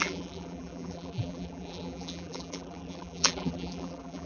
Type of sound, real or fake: fake